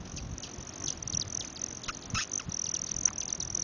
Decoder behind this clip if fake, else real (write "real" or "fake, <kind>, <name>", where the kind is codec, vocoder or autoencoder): real